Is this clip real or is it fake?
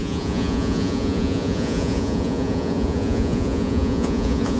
fake